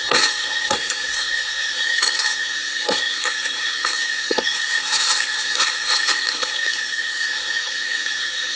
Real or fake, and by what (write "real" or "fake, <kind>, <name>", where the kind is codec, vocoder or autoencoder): fake, codec, SNAC